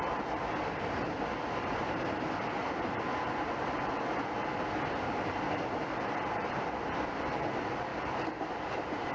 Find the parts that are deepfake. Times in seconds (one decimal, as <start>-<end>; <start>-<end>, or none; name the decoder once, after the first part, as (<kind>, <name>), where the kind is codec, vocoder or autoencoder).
0.0-9.1 (vocoder, BigVGAN v2)